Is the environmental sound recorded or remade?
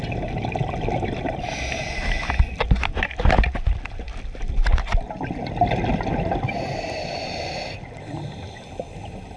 recorded